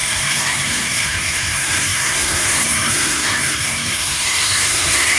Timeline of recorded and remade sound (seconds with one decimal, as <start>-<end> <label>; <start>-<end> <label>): 0.0-5.2 remade